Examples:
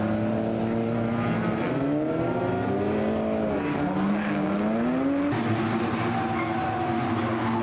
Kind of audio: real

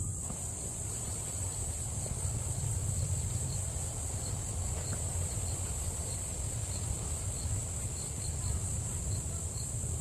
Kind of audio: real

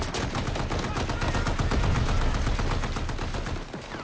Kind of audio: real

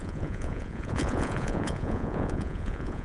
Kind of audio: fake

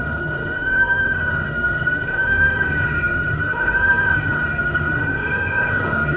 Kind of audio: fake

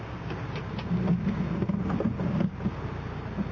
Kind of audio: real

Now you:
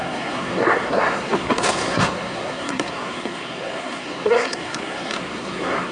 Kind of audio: fake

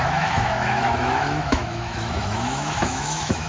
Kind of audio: fake